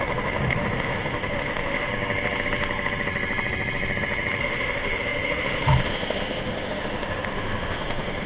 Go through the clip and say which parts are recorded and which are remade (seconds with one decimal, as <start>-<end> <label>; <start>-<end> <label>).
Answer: 0.0-1.9 remade; 1.9-4.4 recorded; 4.4-8.3 remade